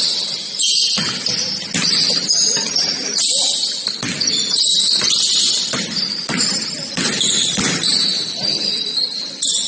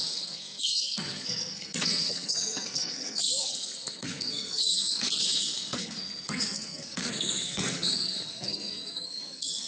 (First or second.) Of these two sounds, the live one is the first